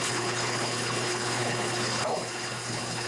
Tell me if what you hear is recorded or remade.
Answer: remade